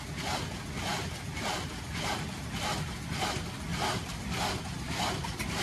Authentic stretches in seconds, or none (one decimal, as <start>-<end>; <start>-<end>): 0.0-3.7